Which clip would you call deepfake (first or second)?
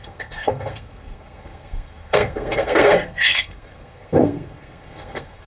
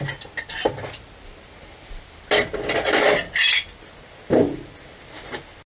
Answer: first